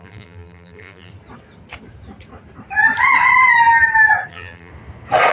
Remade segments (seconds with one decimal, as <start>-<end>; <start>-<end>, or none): 0.0-1.1; 4.3-4.7